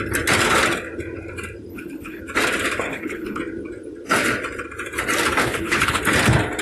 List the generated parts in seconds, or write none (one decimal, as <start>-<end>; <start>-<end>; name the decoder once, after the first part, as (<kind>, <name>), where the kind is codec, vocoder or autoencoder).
1.7-2.2 (codec, HILCodec); 2.9-3.4; 5.4-6.0